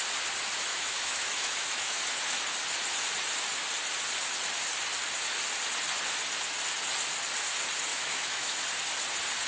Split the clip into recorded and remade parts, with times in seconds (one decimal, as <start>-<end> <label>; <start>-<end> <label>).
0.0-0.7 recorded; 0.7-2.0 remade; 2.0-7.9 recorded; 7.9-8.6 remade; 8.6-9.5 recorded